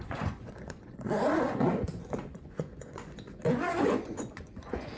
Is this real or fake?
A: fake